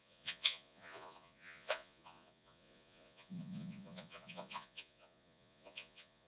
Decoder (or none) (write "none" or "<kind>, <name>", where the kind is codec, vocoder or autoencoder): vocoder, Vocos